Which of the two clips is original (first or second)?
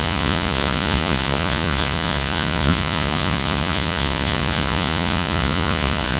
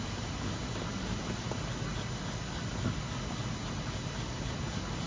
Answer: second